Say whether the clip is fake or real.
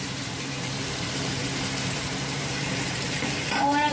fake